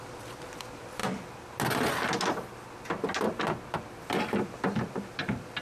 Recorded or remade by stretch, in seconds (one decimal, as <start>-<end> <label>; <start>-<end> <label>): 0.0-5.6 recorded